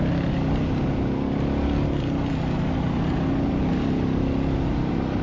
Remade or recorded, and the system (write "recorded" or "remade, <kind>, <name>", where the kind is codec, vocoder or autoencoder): recorded